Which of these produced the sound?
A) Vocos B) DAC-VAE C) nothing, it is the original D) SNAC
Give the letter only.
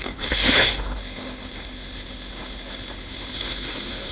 B